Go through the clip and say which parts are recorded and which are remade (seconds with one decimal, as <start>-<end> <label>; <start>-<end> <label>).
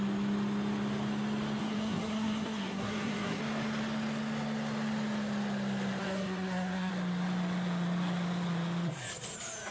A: 0.0-1.6 recorded; 1.6-3.4 remade; 3.4-6.0 recorded; 6.0-6.9 remade; 6.9-9.7 recorded